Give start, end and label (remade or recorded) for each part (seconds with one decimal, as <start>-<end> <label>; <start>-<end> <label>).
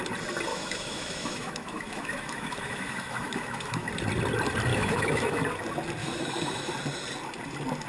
0.0-0.5 recorded; 0.5-3.9 remade; 3.9-4.7 recorded; 4.7-5.4 remade; 5.4-6.0 recorded; 6.0-6.7 remade; 6.7-7.9 recorded